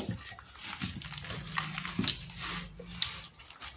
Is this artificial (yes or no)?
no